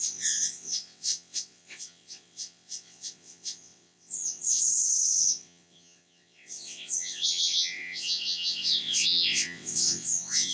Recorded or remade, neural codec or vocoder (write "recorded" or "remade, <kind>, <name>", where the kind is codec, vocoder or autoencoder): remade, vocoder, WaveNeXt